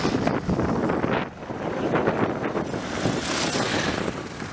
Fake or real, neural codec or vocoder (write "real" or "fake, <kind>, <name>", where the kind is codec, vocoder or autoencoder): real